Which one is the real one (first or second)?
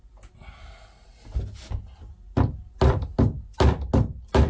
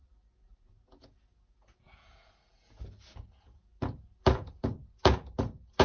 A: first